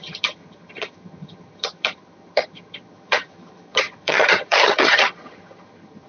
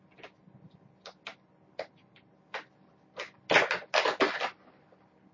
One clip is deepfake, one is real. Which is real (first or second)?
second